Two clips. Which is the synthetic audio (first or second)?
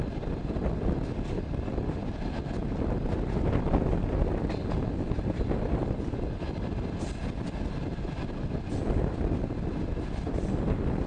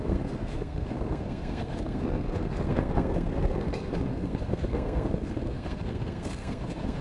second